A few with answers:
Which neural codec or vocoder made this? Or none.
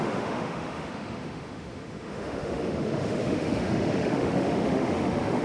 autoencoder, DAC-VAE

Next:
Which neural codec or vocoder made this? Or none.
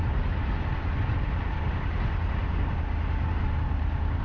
none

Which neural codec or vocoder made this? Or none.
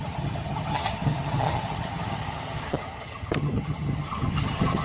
vocoder, HiFi-GAN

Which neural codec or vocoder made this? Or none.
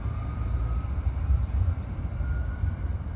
vocoder, BigVGAN v2